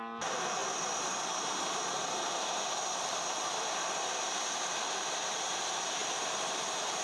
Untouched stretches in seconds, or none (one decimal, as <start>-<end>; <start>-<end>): 0.0-7.0